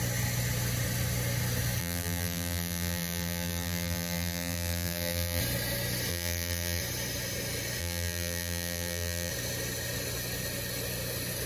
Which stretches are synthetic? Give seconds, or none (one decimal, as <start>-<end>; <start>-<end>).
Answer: 1.8-5.4; 6.1-6.8; 7.8-9.3

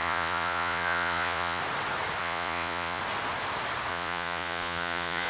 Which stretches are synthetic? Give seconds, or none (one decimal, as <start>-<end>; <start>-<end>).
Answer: 0.0-1.6; 2.2-3.0; 3.9-5.3

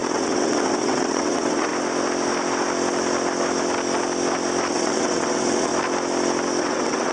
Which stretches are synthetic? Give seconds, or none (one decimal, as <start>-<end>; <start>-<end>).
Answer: 0.0-1.7; 4.7-5.7; 6.6-7.1